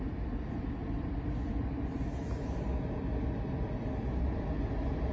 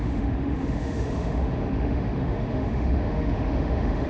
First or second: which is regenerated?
second